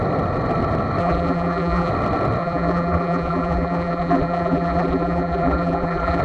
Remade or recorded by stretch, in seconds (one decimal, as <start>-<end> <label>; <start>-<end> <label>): 0.0-1.0 recorded; 1.0-1.9 remade; 1.9-2.4 recorded; 2.4-6.2 remade